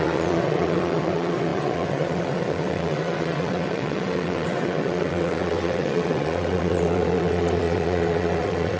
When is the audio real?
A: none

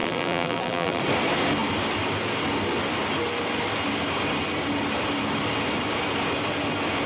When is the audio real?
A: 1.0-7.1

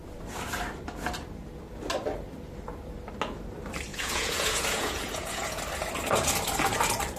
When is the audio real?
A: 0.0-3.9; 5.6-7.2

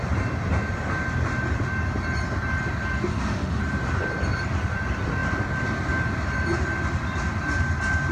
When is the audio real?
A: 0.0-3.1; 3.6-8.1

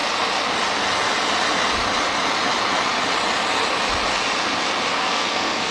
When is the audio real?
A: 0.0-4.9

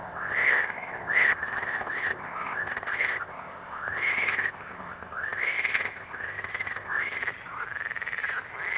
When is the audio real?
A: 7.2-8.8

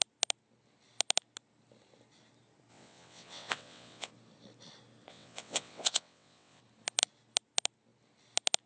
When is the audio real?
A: 0.0-2.7; 4.1-5.1; 6.6-8.7